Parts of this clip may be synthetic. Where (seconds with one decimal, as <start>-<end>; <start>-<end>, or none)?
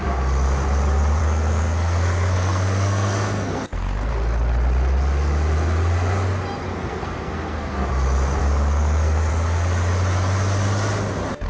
1.2-4.1; 6.6-7.9; 8.4-9.3